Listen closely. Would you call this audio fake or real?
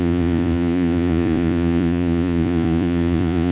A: fake